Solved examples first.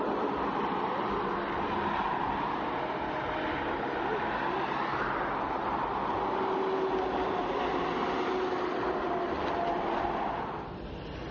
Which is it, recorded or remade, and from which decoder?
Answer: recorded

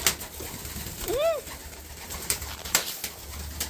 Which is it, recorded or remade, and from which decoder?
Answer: recorded